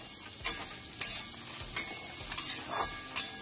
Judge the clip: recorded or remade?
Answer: recorded